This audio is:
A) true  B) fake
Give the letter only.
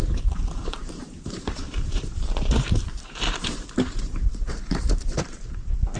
B